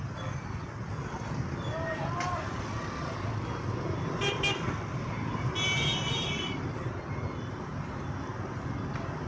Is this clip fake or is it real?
real